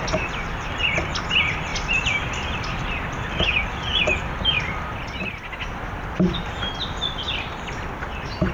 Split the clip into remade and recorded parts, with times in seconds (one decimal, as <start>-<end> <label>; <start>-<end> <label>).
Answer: 0.0-1.7 recorded; 1.7-3.4 remade; 3.4-4.2 recorded; 4.2-8.5 remade